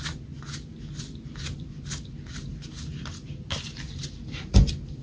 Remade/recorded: recorded